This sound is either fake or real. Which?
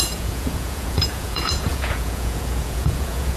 fake